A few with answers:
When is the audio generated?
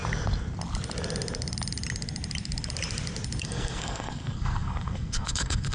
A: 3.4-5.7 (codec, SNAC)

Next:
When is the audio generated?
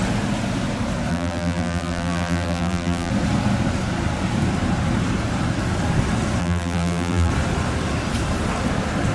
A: 1.1-3.1 (vocoder, BigVGAN v2); 6.4-7.3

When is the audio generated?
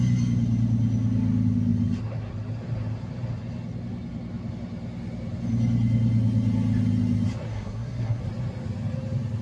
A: 7.5-8.2 (codec, SNAC)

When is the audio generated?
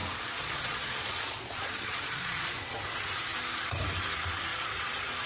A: 0.0-3.2 (vocoder, Vocos); 4.5-5.3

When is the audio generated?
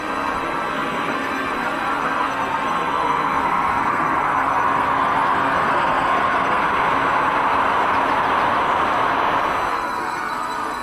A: 0.0-6.6 (codec, SNAC); 9.7-10.8